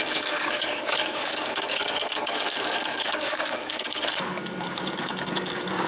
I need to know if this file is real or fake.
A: fake